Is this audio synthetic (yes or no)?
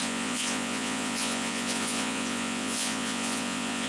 yes